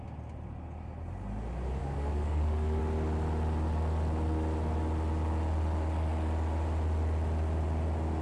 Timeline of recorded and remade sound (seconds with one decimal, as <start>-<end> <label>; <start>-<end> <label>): 0.0-1.8 recorded; 1.8-2.8 remade; 2.8-8.2 recorded